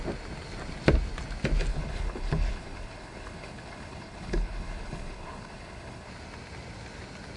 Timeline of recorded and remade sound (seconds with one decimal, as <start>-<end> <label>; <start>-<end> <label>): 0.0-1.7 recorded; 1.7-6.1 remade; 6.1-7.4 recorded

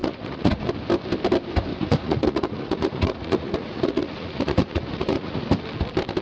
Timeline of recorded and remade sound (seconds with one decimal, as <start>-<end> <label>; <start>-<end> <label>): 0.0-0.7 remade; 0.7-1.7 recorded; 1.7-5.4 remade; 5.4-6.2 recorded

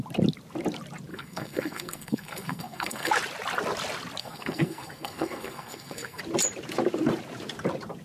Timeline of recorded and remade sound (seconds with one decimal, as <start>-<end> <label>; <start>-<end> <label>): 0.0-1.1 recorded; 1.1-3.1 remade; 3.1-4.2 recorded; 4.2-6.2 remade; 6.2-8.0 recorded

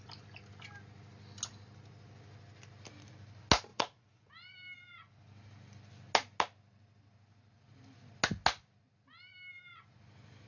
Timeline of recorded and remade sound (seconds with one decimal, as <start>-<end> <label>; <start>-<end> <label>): 0.0-3.7 recorded; 3.7-4.3 remade; 4.3-10.5 recorded

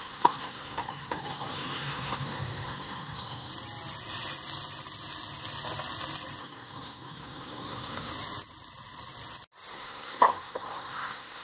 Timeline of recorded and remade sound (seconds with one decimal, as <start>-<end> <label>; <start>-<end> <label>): 0.0-3.5 remade; 3.5-6.4 recorded; 6.4-8.1 remade; 8.1-9.7 recorded; 9.7-11.4 remade